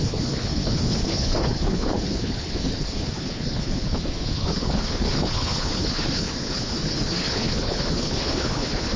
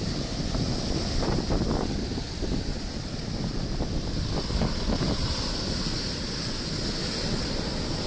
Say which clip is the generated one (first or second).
first